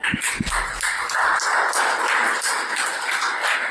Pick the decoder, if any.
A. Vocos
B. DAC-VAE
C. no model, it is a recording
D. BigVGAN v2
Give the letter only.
C